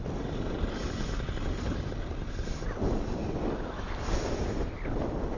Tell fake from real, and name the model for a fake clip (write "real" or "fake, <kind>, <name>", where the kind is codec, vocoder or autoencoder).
real